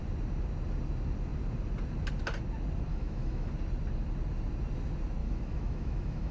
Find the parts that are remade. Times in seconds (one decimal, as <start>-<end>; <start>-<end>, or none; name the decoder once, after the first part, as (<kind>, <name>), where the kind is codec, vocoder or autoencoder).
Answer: 2.9-3.5 (autoencoder, DAC-VAE); 5.2-6.3